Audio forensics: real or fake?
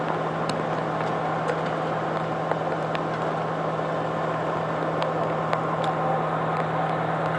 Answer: real